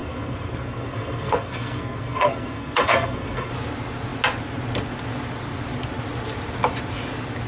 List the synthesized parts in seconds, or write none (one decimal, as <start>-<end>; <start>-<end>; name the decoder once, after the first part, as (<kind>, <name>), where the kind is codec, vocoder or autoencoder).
0.0-3.5 (codec, SNAC)